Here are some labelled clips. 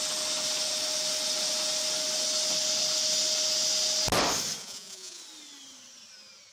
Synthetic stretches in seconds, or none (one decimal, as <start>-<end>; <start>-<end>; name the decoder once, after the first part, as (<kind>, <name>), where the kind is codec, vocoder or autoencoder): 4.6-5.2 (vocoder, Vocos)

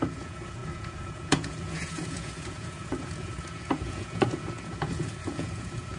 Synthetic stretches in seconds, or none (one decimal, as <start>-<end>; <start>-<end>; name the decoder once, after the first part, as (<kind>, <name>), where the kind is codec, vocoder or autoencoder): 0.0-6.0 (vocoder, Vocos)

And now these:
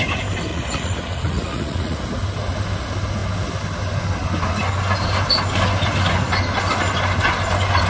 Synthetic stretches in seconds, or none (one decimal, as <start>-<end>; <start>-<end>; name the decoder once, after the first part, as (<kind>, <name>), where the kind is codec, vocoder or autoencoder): 0.5-2.0 (vocoder, Vocos)

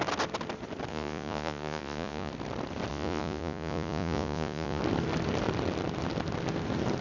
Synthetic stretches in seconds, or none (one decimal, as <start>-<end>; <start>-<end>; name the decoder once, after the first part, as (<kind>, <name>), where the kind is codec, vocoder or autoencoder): 0.9-2.3 (vocoder, Vocos); 2.9-4.8